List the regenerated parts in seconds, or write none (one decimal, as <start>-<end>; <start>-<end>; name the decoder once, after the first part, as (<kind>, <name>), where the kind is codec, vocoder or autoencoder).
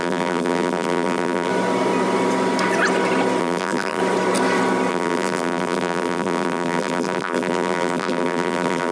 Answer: 0.0-1.5 (vocoder, BigVGAN v2); 3.4-4.0; 4.9-8.9